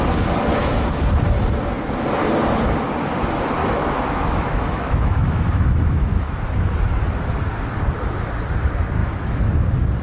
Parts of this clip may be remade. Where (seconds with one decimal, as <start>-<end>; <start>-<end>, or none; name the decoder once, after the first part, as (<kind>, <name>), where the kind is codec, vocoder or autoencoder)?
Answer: 3.6-6.4 (autoencoder, DAC-VAE); 9.0-9.6